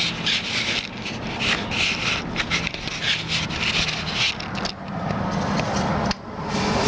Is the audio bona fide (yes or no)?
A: yes